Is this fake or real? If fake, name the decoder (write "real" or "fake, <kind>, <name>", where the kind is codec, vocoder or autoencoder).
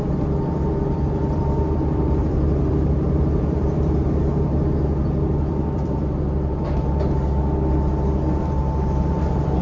fake, vocoder, BigVGAN v2